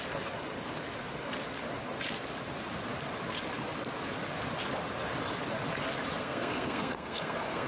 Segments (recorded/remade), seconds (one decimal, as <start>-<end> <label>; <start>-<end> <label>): 0.0-6.2 recorded; 6.2-7.7 remade